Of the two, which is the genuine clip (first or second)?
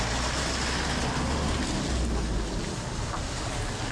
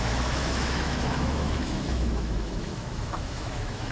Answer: first